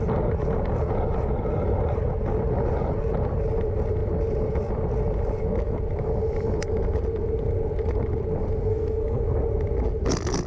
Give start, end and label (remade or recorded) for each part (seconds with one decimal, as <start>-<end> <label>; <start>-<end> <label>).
0.0-8.7 recorded; 8.7-9.2 remade; 9.2-10.5 recorded